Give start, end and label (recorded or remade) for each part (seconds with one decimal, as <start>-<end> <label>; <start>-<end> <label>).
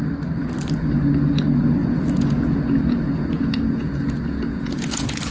0.0-1.8 recorded; 1.8-5.3 remade